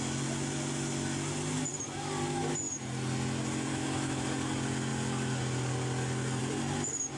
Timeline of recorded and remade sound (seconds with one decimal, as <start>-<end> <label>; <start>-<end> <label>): 0.0-3.7 recorded; 3.7-4.2 remade; 4.2-7.2 recorded